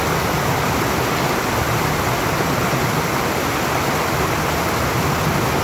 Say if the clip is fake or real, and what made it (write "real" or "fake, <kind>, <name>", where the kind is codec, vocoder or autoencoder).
real